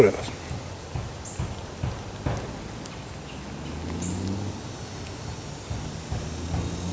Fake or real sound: real